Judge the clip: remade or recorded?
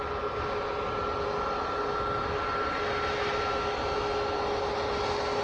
recorded